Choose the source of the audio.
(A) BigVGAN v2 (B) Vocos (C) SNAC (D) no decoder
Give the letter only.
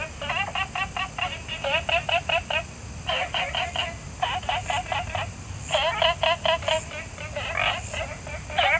D